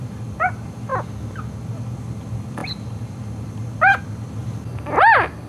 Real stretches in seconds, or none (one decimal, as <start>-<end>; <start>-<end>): 0.9-1.6; 4.4-5.0